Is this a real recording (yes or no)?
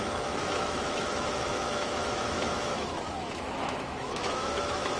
no